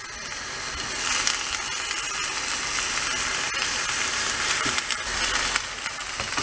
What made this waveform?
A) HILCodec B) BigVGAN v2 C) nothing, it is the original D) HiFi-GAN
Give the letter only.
C